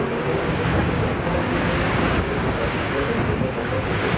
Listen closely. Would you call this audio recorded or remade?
remade